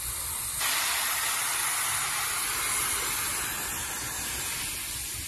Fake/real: real